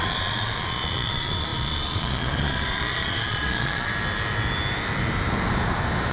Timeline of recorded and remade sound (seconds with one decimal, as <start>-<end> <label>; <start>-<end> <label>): 0.0-3.9 remade; 3.9-6.1 recorded

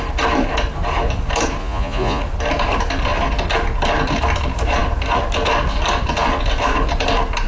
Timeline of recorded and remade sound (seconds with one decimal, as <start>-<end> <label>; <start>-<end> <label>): 0.0-1.6 recorded; 1.6-2.2 remade; 2.2-7.5 recorded

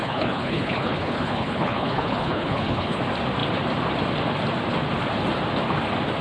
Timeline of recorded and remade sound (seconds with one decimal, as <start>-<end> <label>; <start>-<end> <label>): 0.0-3.0 remade; 3.0-6.2 recorded

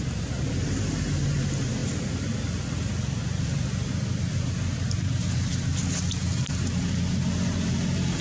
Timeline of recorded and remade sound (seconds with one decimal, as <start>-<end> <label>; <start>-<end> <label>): 0.0-6.2 recorded; 6.2-6.8 remade; 6.8-8.2 recorded

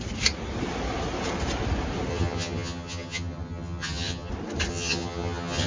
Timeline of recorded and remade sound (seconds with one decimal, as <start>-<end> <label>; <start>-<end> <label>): 0.0-2.1 recorded; 2.1-4.3 remade; 4.3-4.7 recorded; 4.7-5.7 remade

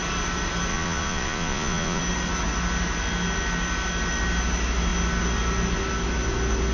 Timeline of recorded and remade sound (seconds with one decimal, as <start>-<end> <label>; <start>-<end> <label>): 0.0-0.7 recorded; 0.7-2.0 remade; 2.0-6.7 recorded

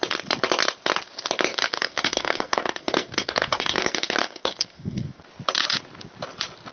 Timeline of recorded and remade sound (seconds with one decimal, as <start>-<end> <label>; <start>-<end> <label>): 0.0-1.5 recorded; 1.5-5.2 remade; 5.2-6.7 recorded

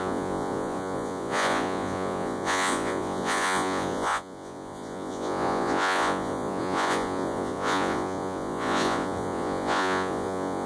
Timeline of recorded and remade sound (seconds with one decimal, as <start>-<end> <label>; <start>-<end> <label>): 0.0-10.7 remade